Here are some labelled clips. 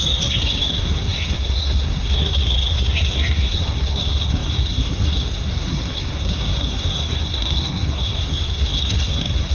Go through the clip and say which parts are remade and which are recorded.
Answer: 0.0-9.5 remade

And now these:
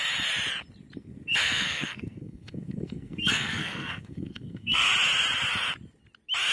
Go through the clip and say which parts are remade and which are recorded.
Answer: 0.0-1.0 recorded; 1.0-4.9 remade; 4.9-6.5 recorded

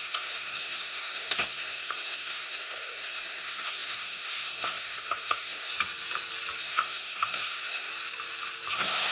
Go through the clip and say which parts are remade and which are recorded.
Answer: 0.0-5.7 remade; 5.7-6.6 recorded; 6.6-7.9 remade; 7.9-8.7 recorded; 8.7-9.1 remade

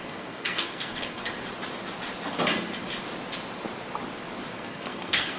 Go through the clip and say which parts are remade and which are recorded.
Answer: 0.0-1.3 remade; 1.3-4.5 recorded; 4.5-5.4 remade

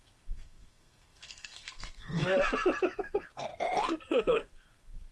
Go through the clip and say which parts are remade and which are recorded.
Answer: 0.0-2.2 remade; 2.2-3.0 recorded; 3.0-3.5 remade; 3.5-4.2 recorded; 4.2-5.1 remade

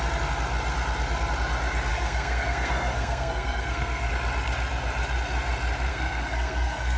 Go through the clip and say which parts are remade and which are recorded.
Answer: 0.0-1.9 recorded; 1.9-4.1 remade; 4.1-5.9 recorded; 5.9-7.0 remade

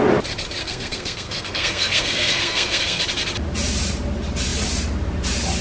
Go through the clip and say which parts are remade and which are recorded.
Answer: 0.0-0.6 recorded; 0.6-3.0 remade; 3.0-5.6 recorded

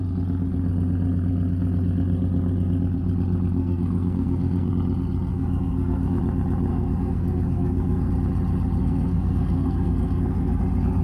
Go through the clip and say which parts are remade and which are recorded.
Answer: 0.0-3.6 recorded; 3.6-4.7 remade; 4.7-5.3 recorded; 5.3-6.2 remade; 6.2-6.7 recorded; 6.7-8.1 remade; 8.1-8.8 recorded; 8.8-10.6 remade; 10.6-11.0 recorded